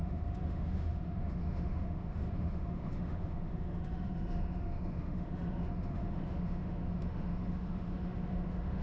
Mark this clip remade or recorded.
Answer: remade